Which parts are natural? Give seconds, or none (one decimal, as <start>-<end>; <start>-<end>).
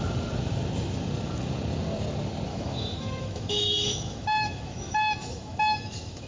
0.0-2.5